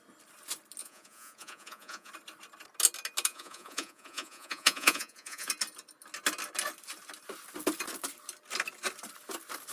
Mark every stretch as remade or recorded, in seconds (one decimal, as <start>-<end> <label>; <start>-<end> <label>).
0.0-0.8 recorded; 0.8-2.1 remade; 2.1-3.3 recorded; 3.3-5.5 remade; 5.5-9.7 recorded